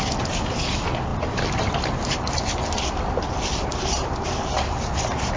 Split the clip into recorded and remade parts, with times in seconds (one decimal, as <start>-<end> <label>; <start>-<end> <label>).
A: 0.0-5.4 recorded